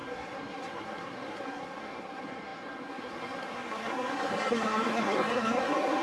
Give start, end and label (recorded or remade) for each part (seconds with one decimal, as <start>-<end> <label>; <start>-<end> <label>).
0.0-6.0 remade